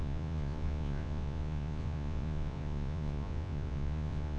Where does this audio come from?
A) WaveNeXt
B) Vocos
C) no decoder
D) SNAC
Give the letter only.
B